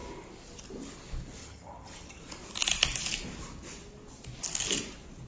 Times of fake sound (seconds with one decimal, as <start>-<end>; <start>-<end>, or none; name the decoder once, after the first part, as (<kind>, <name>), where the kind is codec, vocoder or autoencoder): 1.4-2.2 (vocoder, HiFi-GAN)